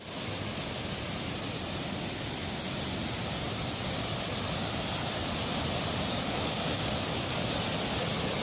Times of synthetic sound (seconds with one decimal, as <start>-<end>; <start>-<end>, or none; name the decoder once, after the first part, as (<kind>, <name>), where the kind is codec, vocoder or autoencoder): 6.1-7.5 (codec, DAC)